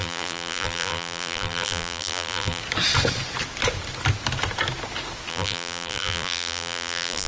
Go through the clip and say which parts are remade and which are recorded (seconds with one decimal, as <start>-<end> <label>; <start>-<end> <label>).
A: 0.0-2.6 remade; 2.6-5.3 recorded; 5.3-7.3 remade